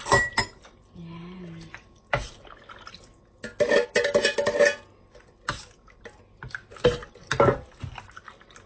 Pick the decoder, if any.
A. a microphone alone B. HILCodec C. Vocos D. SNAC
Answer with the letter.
A